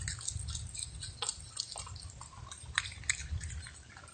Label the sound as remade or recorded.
recorded